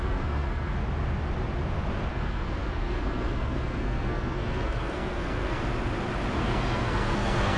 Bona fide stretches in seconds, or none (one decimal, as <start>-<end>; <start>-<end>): 0.8-2.1; 5.6-6.4